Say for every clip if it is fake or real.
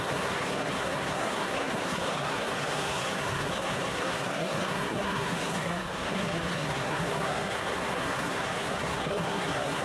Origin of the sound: fake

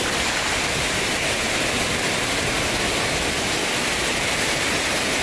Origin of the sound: real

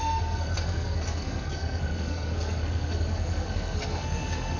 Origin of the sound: fake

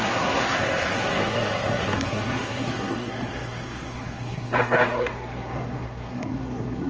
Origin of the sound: fake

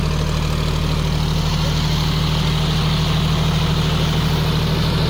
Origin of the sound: real